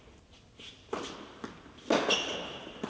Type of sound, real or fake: real